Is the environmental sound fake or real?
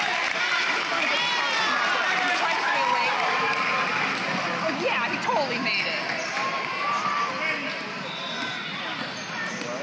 real